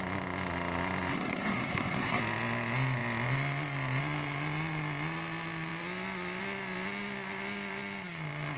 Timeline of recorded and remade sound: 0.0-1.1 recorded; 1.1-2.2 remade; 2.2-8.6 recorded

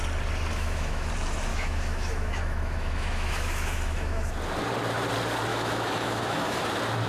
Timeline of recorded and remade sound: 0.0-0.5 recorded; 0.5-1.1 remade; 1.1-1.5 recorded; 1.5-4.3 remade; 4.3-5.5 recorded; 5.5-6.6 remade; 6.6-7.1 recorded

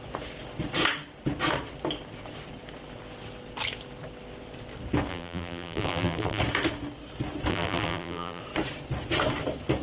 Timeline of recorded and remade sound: 0.0-5.1 recorded; 5.1-6.4 remade; 6.4-7.5 recorded; 7.5-8.4 remade; 8.4-9.8 recorded

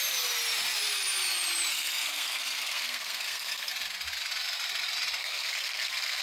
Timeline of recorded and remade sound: 0.0-1.7 recorded; 1.7-3.7 remade; 3.7-5.2 recorded; 5.2-6.2 remade

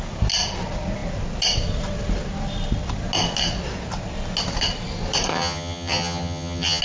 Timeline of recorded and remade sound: 0.0-5.3 recorded; 5.3-6.8 remade

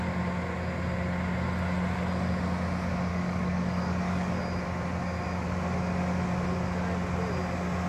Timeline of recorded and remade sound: 0.0-3.1 recorded; 3.1-4.4 remade; 4.4-7.9 recorded